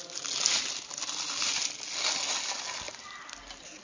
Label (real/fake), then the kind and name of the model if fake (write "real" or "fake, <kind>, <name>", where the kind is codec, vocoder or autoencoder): real